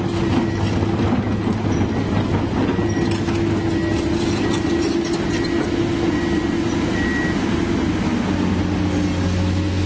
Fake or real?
real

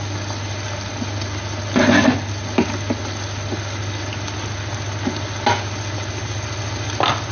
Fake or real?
real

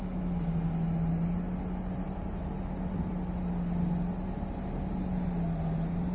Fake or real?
real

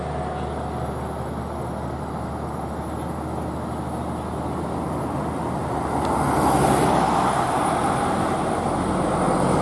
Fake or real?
real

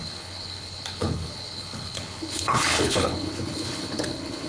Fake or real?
fake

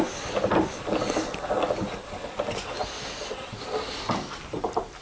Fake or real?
real